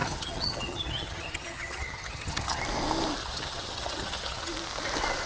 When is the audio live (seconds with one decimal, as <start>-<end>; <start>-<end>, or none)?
2.6-3.2; 4.5-5.3